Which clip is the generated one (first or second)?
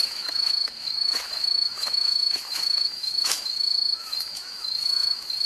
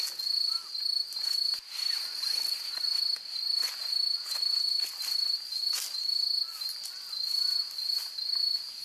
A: first